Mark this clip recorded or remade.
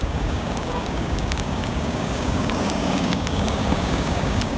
remade